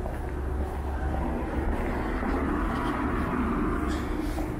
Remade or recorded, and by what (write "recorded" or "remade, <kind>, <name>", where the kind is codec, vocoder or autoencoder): recorded